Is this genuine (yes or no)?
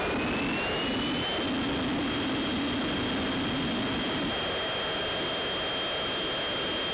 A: yes